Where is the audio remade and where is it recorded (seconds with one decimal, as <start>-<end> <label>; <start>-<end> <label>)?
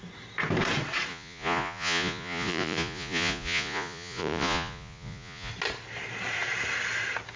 0.0-1.1 recorded; 1.1-5.5 remade; 5.5-7.4 recorded